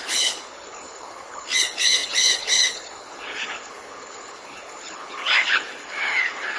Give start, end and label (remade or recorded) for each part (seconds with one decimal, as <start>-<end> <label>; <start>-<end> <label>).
0.0-6.6 remade